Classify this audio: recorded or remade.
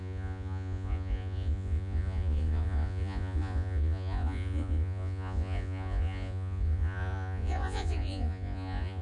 remade